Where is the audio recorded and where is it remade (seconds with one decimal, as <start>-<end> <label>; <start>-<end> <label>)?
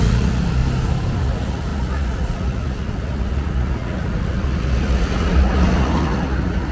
0.0-0.6 remade; 0.6-1.2 recorded; 1.2-6.7 remade